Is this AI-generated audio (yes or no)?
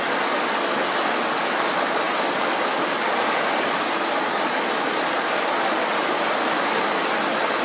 no